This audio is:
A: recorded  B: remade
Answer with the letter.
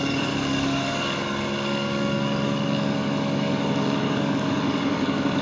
B